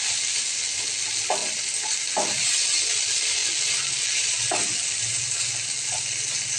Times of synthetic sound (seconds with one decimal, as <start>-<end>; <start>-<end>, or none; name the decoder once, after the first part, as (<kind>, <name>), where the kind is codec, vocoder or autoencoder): 1.4-2.1 (vocoder, BigVGAN v2)